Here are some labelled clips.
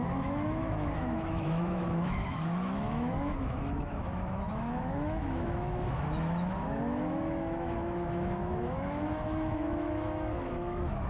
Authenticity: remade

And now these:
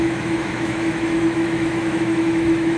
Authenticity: remade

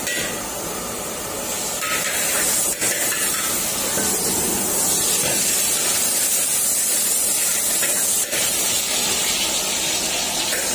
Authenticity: recorded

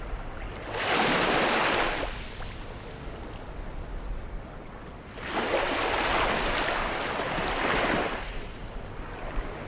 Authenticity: recorded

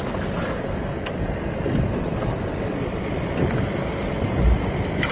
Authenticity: recorded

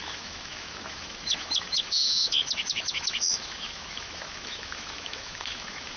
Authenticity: remade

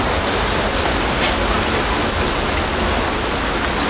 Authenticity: recorded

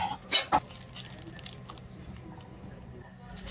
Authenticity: recorded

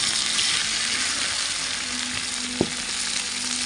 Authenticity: recorded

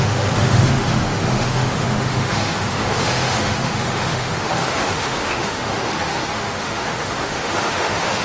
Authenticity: remade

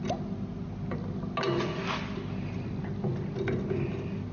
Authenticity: recorded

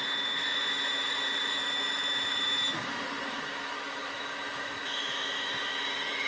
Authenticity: remade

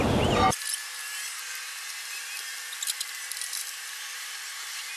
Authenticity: recorded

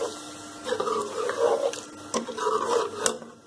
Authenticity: recorded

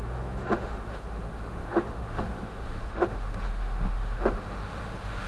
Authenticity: remade